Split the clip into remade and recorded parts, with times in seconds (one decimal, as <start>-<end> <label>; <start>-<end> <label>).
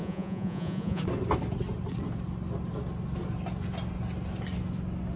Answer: 0.0-1.0 remade; 1.0-5.2 recorded